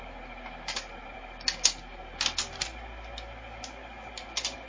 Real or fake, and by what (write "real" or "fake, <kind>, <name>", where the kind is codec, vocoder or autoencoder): real